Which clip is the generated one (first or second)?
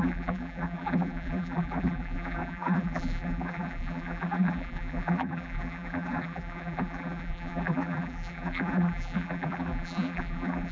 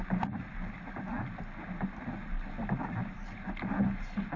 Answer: first